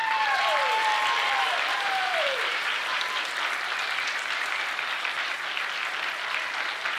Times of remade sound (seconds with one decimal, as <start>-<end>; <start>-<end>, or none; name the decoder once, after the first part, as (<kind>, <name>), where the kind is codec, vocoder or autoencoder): 0.0-3.2 (vocoder, BigVGAN v2)